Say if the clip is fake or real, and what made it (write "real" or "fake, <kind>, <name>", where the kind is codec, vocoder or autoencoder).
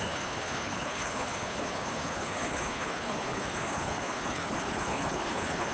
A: fake, codec, HILCodec